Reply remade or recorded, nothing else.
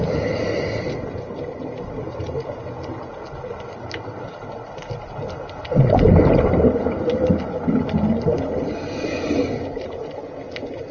recorded